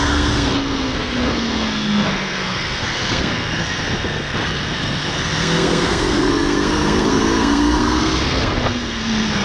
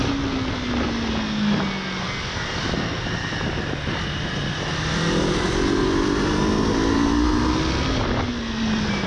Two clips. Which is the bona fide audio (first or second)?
second